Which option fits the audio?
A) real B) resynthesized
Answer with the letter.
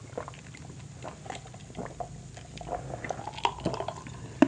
A